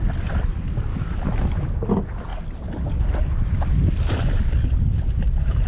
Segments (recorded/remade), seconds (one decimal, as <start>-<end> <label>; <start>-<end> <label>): 0.0-0.9 recorded; 0.9-1.6 remade; 1.6-5.7 recorded